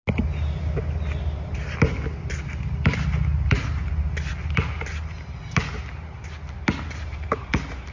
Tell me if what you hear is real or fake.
real